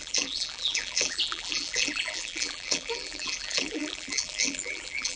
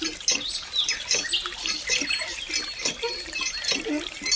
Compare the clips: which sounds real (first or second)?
second